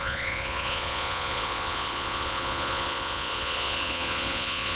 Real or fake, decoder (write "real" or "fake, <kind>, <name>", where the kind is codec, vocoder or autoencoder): fake, vocoder, Vocos